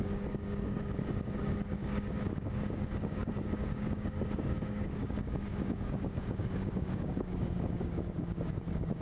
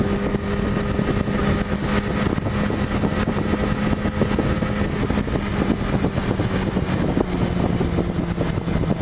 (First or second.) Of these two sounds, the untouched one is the second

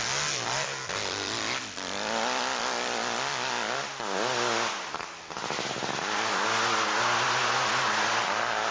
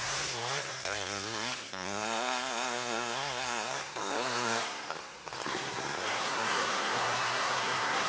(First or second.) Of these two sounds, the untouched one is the first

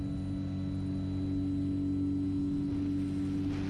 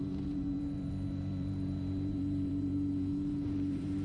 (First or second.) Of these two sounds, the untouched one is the first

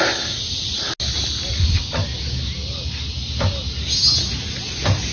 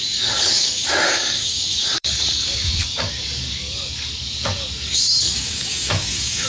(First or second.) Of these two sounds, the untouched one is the first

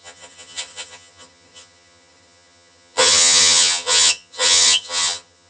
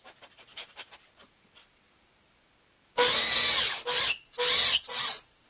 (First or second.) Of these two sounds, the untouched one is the second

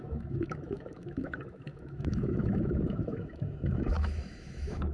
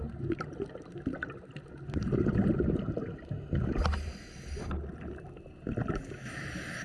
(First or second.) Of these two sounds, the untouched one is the second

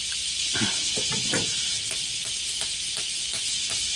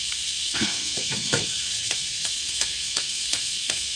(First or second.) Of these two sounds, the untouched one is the first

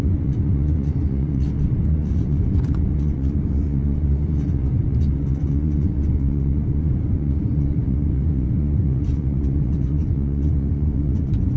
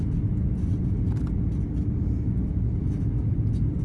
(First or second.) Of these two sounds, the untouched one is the second